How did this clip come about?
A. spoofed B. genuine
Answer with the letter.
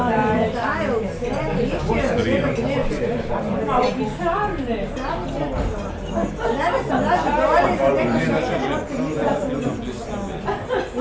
B